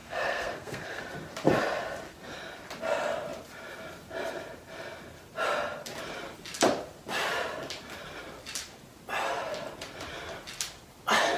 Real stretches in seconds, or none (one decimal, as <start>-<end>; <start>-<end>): 1.0-11.4